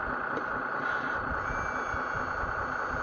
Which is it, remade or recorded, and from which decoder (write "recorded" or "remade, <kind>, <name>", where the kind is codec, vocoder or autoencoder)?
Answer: recorded